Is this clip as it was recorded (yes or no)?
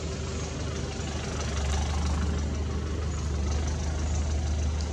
yes